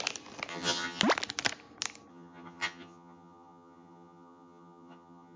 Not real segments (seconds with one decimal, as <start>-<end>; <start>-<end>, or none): 0.5-1.0; 2.1-5.4